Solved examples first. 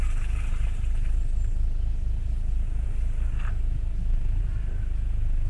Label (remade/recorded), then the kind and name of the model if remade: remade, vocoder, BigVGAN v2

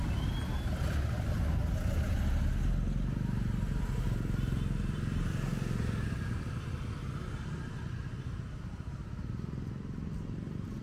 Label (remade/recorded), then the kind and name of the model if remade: recorded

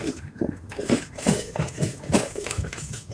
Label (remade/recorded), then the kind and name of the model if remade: remade, autoencoder, DAC-VAE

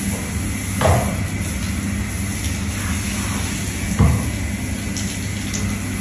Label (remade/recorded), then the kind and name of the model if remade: recorded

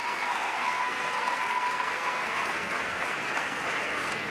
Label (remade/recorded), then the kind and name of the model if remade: remade, codec, SNAC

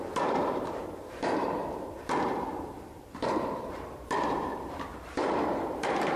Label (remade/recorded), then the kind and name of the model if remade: remade, vocoder, BigVGAN v2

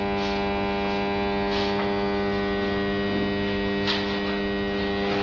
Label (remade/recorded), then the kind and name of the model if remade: recorded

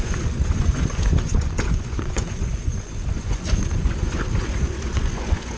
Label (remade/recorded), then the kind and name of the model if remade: remade, vocoder, Vocos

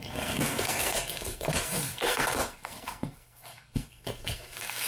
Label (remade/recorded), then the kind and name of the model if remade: remade, codec, SNAC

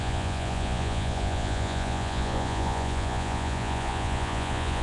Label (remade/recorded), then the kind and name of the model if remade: remade, vocoder, Vocos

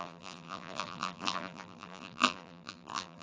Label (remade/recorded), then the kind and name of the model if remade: remade, vocoder, BigVGAN v2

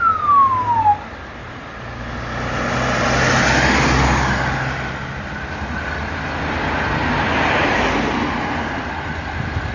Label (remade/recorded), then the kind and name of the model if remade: recorded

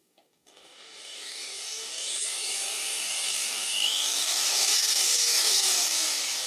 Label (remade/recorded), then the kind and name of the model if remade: remade, codec, DAC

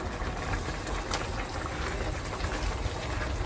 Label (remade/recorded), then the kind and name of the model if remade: recorded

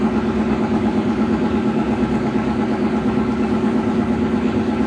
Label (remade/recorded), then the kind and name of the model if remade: remade, codec, DAC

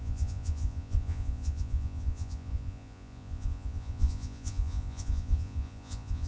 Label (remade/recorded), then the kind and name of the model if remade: remade, vocoder, Vocos